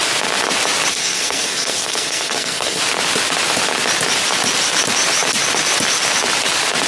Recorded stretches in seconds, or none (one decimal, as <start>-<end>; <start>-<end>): 0.0-0.9; 2.8-6.9